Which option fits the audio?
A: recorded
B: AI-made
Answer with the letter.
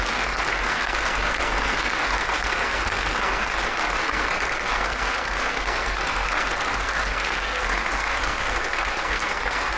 B